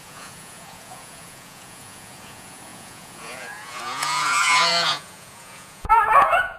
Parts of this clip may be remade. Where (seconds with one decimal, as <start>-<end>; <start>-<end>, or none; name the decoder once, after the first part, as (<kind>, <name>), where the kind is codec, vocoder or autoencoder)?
0.0-6.6 (vocoder, Vocos)